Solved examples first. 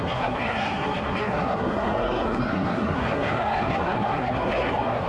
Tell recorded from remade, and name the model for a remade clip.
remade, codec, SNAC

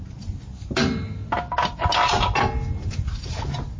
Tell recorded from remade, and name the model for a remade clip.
recorded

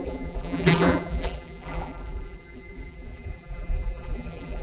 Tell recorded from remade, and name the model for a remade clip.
remade, vocoder, BigVGAN v2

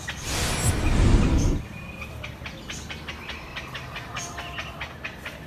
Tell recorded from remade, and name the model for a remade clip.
recorded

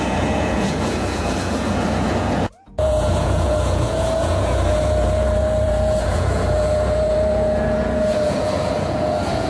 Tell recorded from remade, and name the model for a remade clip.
remade, vocoder, Vocos